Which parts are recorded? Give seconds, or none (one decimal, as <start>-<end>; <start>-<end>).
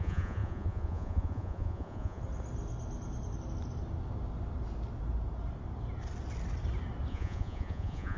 2.2-7.1